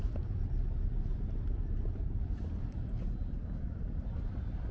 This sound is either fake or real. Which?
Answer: real